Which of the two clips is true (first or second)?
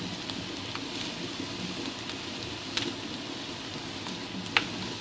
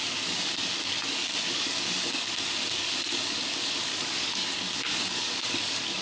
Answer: first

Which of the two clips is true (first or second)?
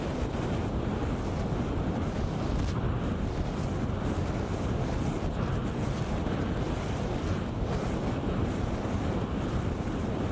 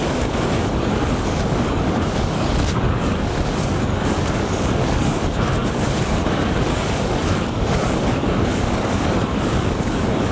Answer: first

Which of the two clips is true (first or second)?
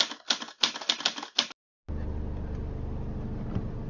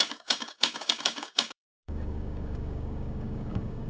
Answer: first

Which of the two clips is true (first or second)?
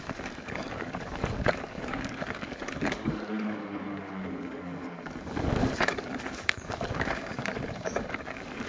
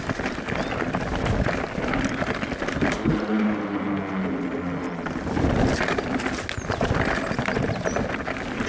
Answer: second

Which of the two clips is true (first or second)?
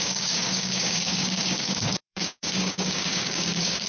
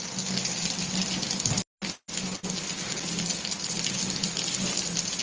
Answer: second